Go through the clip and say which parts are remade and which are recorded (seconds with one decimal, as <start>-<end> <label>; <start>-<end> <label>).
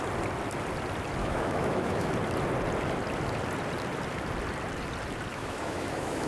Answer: 0.0-1.2 recorded; 1.2-2.1 remade; 2.1-5.3 recorded; 5.3-6.3 remade